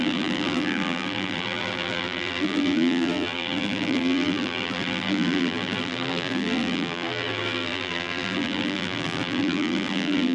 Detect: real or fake fake